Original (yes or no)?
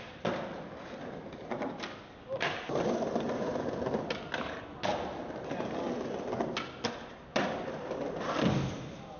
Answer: yes